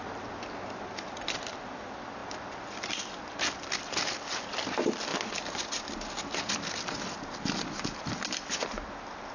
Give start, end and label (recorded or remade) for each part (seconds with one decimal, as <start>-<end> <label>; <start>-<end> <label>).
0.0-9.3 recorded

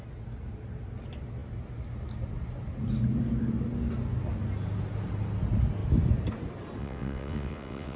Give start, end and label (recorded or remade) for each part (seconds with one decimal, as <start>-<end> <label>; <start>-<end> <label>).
0.0-6.8 recorded; 6.8-8.0 remade

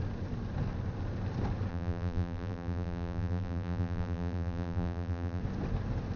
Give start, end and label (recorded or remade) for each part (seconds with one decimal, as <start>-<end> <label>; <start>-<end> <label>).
0.0-1.7 recorded; 1.7-5.4 remade; 5.4-6.2 recorded

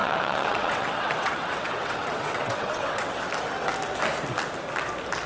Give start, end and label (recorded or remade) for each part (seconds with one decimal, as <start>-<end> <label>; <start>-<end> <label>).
0.0-3.2 remade; 3.2-5.3 recorded

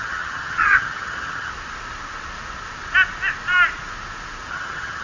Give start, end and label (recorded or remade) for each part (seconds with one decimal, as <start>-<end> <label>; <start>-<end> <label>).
0.0-1.5 remade; 1.5-4.5 recorded; 4.5-5.0 remade

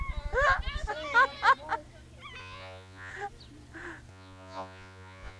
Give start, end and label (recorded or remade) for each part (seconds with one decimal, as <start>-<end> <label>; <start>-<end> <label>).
0.0-2.4 recorded; 2.4-3.1 remade; 3.1-4.1 recorded; 4.1-5.4 remade

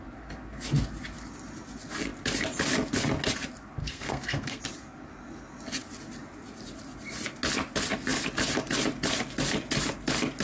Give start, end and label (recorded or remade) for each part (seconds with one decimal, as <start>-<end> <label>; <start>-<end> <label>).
0.0-3.8 recorded; 3.8-4.6 remade; 4.6-10.4 recorded

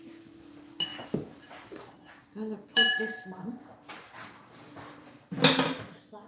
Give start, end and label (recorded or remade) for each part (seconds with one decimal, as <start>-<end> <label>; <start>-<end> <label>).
0.0-0.9 recorded; 0.9-2.1 remade; 2.1-2.7 recorded; 2.7-5.3 remade; 5.3-6.3 recorded